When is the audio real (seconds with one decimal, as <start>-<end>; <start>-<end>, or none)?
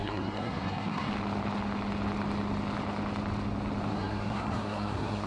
1.1-3.9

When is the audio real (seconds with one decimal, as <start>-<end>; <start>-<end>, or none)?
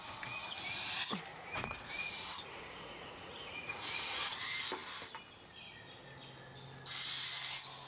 0.0-1.3; 4.3-7.9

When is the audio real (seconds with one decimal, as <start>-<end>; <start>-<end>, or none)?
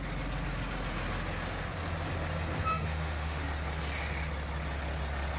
0.0-2.7; 3.4-5.4